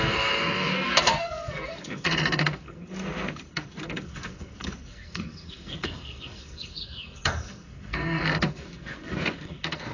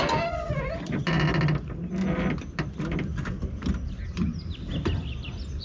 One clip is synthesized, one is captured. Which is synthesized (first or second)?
first